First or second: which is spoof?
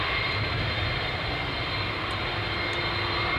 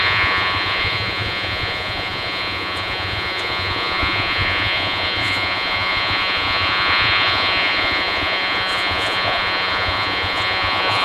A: second